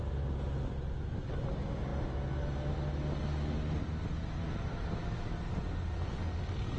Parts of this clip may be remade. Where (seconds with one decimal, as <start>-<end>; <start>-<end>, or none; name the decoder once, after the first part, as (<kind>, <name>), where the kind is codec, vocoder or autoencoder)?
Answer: none